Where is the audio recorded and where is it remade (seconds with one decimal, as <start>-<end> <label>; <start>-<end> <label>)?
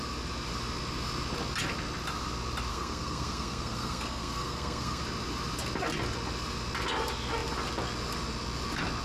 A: 0.0-2.7 recorded; 2.7-5.0 remade; 5.0-9.0 recorded